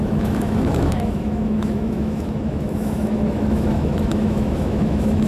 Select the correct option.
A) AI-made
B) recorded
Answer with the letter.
A